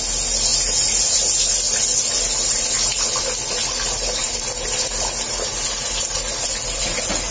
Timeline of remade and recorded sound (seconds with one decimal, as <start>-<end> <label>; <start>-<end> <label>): 0.0-7.3 recorded